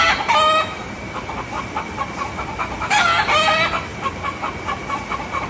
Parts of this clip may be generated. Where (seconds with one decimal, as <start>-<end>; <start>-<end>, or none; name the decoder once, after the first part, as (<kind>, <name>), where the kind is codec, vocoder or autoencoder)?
none